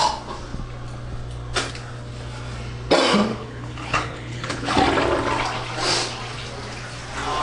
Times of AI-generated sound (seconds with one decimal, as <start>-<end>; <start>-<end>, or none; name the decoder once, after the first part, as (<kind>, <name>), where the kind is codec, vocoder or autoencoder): 3.3-4.8 (codec, HILCodec)